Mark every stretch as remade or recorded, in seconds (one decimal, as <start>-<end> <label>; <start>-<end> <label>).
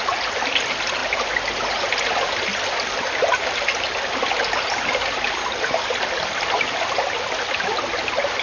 0.0-8.4 recorded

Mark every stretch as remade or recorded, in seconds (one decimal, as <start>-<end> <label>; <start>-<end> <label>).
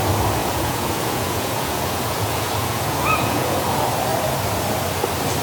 0.0-0.4 recorded; 0.4-3.6 remade; 3.6-5.4 recorded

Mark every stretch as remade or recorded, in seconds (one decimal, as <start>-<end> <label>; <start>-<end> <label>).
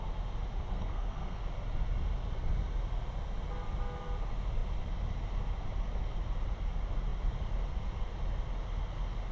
0.0-0.7 recorded; 0.7-1.4 remade; 1.4-9.3 recorded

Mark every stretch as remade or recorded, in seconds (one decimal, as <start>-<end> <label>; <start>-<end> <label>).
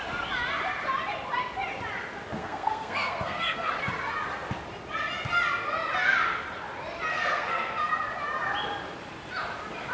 0.0-2.4 recorded; 2.4-3.7 remade; 3.7-7.1 recorded; 7.1-7.9 remade; 7.9-9.9 recorded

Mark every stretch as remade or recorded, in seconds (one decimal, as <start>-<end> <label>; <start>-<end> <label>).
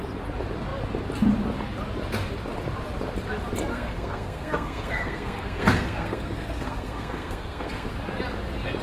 0.0-3.7 recorded; 3.7-7.9 remade; 7.9-8.8 recorded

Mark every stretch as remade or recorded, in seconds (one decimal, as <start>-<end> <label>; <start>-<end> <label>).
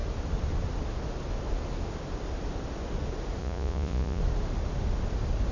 0.0-3.4 recorded; 3.4-4.2 remade; 4.2-5.5 recorded